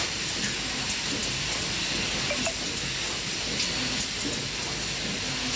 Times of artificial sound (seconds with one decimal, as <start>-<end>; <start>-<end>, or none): none